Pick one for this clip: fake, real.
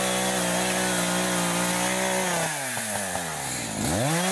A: real